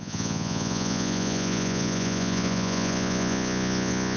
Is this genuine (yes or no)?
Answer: no